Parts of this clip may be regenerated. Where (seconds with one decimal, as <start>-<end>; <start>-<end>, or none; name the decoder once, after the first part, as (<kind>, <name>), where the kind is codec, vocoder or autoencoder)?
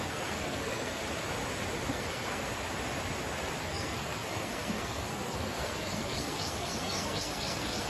0.0-1.0 (codec, SNAC); 1.9-2.5; 3.6-7.9